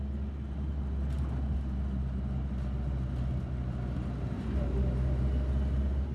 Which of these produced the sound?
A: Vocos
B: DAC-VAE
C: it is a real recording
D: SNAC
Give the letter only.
C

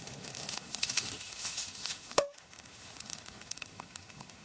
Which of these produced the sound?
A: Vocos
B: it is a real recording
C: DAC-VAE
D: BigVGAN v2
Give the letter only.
C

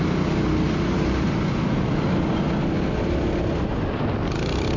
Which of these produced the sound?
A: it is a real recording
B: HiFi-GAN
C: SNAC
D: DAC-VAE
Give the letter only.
A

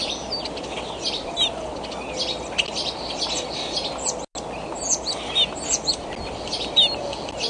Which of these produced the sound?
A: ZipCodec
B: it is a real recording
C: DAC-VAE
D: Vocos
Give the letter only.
B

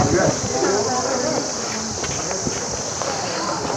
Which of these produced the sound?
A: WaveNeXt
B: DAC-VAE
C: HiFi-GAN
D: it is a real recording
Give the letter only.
D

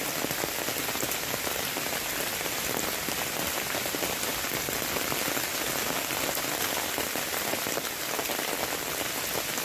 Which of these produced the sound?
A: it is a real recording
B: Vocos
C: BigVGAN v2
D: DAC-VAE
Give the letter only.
A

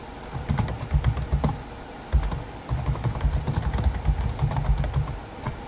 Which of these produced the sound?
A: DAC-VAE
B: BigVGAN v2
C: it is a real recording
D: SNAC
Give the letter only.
C